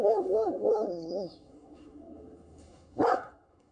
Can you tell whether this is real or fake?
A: fake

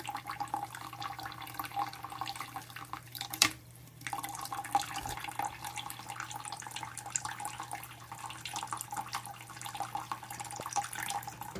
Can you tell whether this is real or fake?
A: real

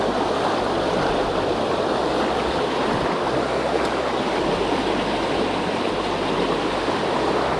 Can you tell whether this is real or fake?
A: real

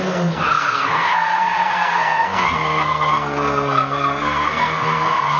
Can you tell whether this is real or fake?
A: fake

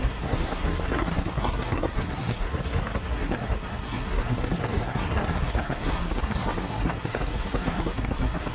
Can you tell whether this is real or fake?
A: fake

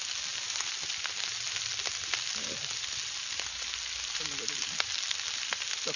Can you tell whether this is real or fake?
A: real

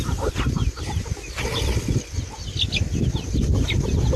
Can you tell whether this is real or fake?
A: real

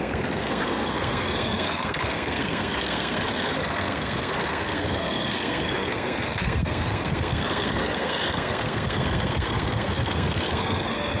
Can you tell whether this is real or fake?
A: fake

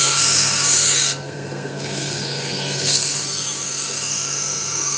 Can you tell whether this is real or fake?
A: fake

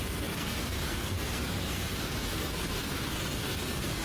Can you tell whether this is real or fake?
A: fake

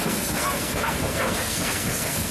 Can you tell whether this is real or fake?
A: fake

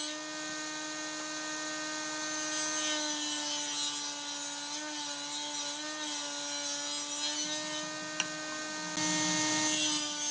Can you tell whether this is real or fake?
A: real